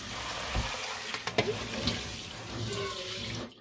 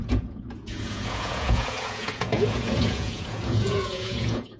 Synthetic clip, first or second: second